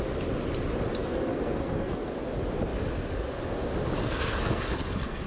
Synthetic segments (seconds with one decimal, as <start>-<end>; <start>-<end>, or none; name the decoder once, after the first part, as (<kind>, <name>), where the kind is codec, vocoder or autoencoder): 1.0-2.1 (codec, SNAC); 4.0-5.3